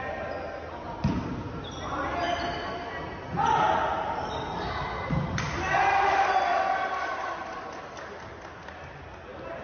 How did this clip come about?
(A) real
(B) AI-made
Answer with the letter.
A